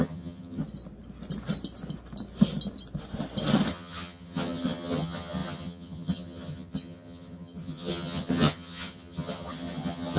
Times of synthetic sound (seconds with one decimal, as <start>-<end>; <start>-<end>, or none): 0.0-0.6; 3.7-10.2

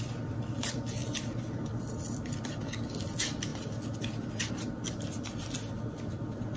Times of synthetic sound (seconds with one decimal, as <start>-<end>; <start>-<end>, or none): none

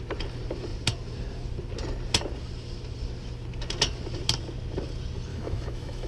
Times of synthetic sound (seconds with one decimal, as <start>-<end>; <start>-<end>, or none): 5.3-6.1

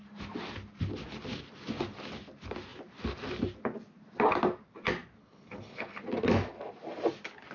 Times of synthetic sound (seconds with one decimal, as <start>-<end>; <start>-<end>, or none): 5.2-6.0

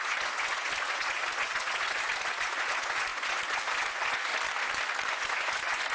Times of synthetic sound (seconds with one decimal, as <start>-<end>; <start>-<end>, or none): 0.0-4.3; 5.1-5.9

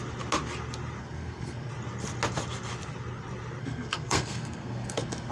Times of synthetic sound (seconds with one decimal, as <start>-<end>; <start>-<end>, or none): 1.0-1.7; 3.6-5.3

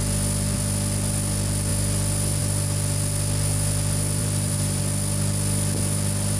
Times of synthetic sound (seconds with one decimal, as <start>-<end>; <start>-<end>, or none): 4.2-4.8